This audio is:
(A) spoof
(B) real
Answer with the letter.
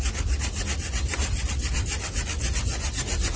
B